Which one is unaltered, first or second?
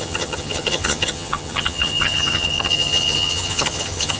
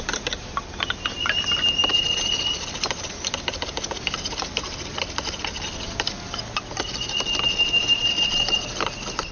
second